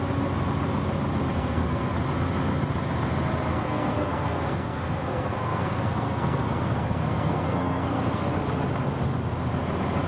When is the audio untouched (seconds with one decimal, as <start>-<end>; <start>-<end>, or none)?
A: 0.0-1.3; 1.9-3.5; 8.3-10.1